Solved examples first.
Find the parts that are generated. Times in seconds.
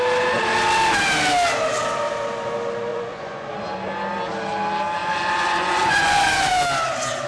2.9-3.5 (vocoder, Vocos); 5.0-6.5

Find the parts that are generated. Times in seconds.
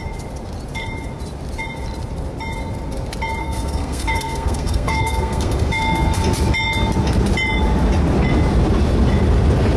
3.4-6.2 (codec, SNAC)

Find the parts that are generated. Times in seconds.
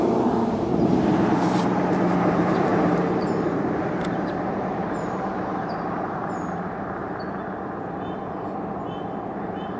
0.0-7.0 (vocoder, BigVGAN v2); 9.3-9.8